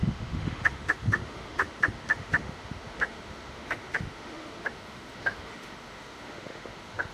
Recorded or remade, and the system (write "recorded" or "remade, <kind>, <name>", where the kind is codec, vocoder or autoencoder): remade, autoencoder, DAC-VAE